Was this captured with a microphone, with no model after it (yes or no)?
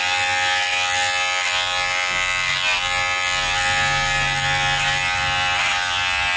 yes